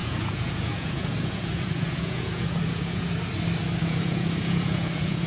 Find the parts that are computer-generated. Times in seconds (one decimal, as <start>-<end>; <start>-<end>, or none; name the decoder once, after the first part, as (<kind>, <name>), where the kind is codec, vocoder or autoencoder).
0.0-3.2 (vocoder, Vocos); 3.8-5.3